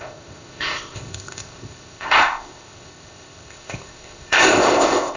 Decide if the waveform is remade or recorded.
remade